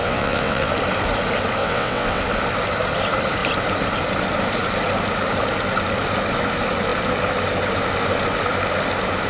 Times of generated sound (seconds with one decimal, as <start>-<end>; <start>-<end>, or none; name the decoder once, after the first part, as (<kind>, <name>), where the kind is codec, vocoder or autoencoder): 0.0-0.7 (vocoder, WaveNeXt); 1.6-2.2